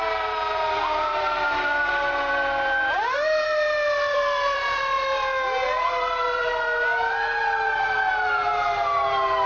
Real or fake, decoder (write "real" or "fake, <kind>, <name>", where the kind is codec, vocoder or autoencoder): fake, vocoder, BigVGAN v2